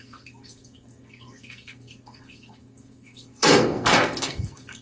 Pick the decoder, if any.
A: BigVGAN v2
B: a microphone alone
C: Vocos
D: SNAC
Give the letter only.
D